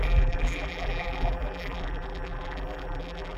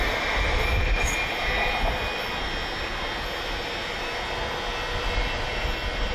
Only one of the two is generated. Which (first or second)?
first